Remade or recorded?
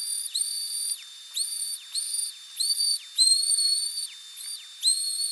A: recorded